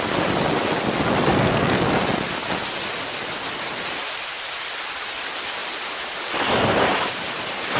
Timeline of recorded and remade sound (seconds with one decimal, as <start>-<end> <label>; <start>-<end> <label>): 0.0-1.3 recorded; 1.3-1.8 remade; 1.8-7.8 recorded